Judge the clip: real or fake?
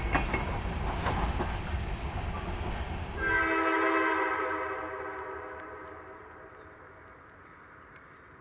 real